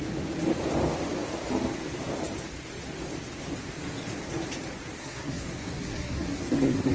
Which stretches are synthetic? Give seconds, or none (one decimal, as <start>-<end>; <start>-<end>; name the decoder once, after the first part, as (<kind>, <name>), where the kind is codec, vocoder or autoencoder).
5.0-6.9 (codec, SNAC)